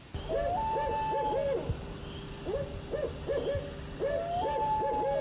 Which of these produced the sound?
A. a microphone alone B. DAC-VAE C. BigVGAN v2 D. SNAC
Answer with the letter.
A